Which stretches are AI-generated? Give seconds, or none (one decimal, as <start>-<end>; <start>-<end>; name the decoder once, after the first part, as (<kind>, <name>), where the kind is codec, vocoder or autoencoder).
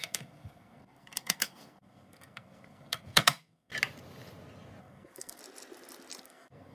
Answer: 0.0-3.7 (codec, SNAC); 4.8-5.4; 6.2-6.7